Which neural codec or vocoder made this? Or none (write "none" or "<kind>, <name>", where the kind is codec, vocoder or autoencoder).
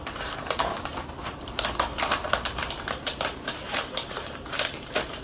vocoder, BigVGAN v2